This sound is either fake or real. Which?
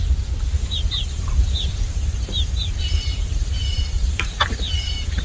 fake